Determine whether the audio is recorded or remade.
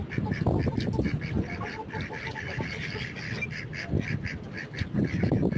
recorded